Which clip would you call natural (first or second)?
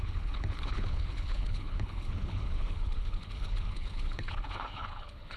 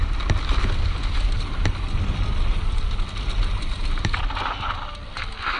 second